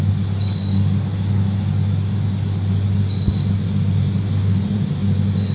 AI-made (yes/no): no